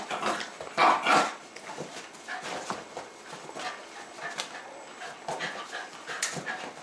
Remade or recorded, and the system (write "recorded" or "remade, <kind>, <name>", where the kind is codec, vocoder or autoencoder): recorded